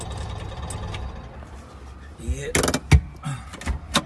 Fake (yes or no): no